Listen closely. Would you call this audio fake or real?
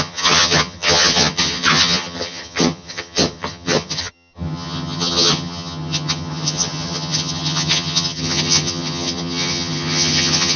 fake